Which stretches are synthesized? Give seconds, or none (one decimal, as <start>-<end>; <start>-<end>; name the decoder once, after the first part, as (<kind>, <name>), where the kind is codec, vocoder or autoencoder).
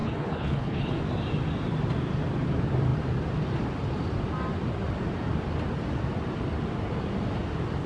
0.0-1.0 (codec, HILCodec)